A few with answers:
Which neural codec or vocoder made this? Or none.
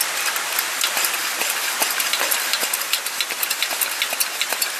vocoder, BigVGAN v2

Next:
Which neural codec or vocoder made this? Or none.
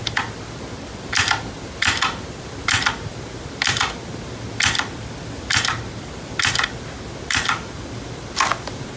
vocoder, BigVGAN v2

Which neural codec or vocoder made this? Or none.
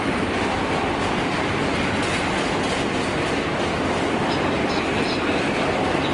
none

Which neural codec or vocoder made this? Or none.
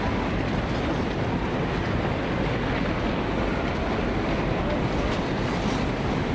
vocoder, BigVGAN v2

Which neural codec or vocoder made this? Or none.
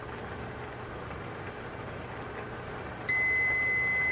none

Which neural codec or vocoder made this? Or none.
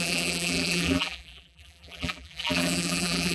vocoder, BigVGAN v2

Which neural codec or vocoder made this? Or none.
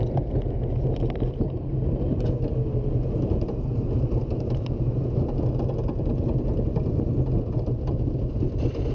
none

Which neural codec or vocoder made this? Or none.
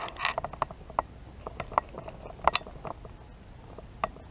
none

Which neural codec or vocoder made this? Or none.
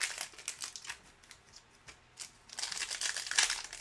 none